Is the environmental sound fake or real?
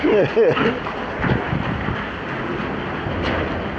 real